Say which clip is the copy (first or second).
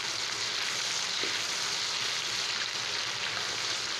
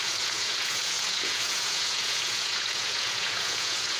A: second